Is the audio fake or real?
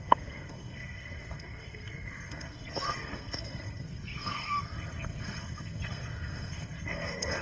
fake